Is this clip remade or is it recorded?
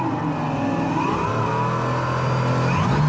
recorded